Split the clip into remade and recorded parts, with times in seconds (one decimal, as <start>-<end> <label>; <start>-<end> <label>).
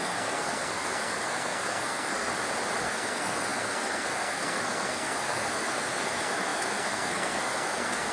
0.0-2.3 remade; 2.3-2.8 recorded; 2.8-8.1 remade